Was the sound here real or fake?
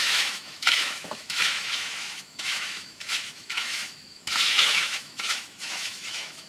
fake